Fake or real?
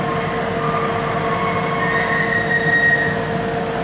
real